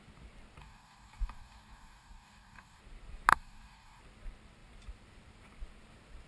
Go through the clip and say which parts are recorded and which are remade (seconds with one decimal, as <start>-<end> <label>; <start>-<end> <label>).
0.0-0.6 recorded; 0.6-2.8 remade; 2.8-3.3 recorded; 3.3-4.0 remade; 4.0-6.3 recorded